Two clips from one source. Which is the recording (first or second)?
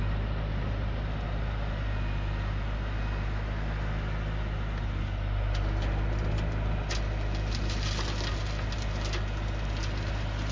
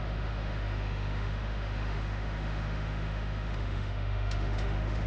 first